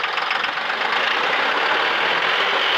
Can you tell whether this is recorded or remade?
recorded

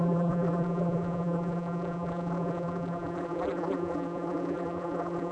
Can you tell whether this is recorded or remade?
remade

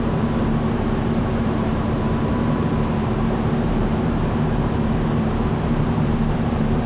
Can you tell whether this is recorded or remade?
remade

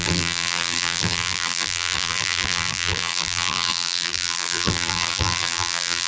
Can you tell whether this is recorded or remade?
remade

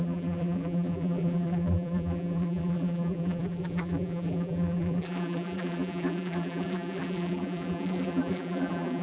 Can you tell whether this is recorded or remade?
remade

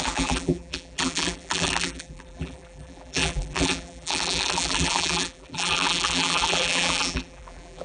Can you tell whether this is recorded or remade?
remade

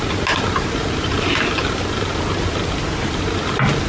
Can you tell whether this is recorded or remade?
recorded